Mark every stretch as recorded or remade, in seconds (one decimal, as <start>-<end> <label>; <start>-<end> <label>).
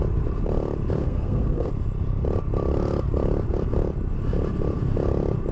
0.0-1.0 recorded; 1.0-1.7 remade; 1.7-5.5 recorded